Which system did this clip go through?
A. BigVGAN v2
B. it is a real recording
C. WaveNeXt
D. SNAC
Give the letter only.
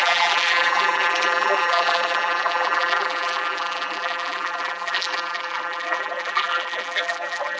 A